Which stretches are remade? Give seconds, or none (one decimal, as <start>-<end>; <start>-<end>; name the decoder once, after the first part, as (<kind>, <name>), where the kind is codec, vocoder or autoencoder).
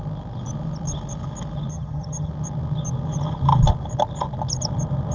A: 1.7-2.3 (vocoder, HiFi-GAN)